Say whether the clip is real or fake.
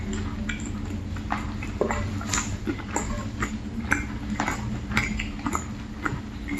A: real